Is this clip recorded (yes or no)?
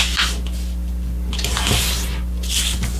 yes